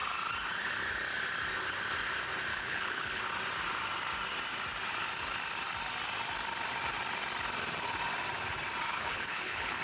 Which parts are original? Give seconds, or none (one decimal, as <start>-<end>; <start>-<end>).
0.0-2.5; 3.2-8.9